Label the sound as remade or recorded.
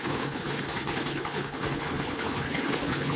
remade